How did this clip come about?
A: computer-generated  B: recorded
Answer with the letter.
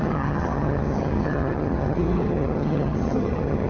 A